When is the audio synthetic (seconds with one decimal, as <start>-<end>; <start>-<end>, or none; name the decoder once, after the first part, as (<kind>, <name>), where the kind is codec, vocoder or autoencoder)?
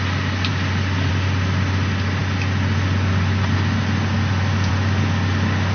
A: none